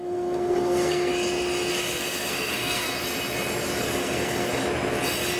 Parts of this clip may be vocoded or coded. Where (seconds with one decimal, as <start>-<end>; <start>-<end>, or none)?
0.0-1.1; 1.7-2.9; 3.8-4.6